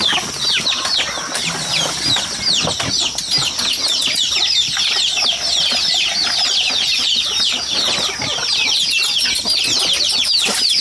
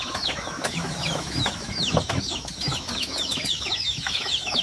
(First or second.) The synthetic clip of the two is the second